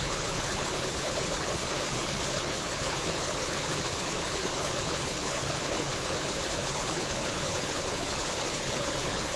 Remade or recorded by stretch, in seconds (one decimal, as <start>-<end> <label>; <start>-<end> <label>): 0.0-9.4 remade